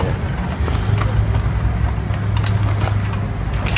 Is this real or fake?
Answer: real